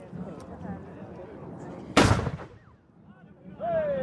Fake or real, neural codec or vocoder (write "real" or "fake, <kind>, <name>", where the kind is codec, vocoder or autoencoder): fake, vocoder, BigVGAN v2